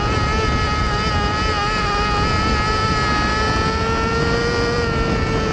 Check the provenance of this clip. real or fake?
real